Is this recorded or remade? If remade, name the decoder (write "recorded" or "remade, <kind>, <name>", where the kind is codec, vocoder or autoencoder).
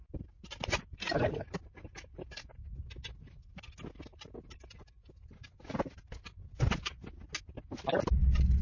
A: recorded